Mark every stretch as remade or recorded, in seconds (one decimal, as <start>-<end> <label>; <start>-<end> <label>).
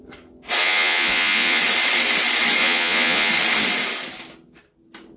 0.0-0.6 recorded; 0.6-1.6 remade; 1.6-2.6 recorded; 2.6-3.3 remade; 3.3-5.2 recorded